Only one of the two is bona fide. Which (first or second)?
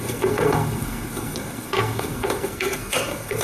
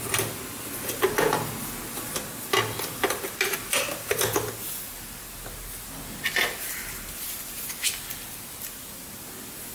second